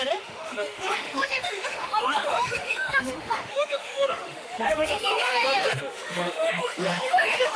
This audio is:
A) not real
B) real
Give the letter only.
A